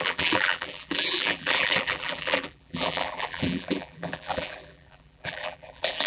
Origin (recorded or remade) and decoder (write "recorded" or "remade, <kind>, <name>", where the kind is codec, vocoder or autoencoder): remade, vocoder, BigVGAN v2